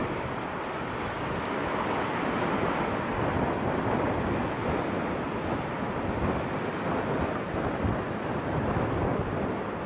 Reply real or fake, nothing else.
real